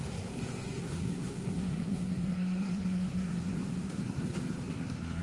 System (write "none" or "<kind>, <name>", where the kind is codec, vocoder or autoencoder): codec, SNAC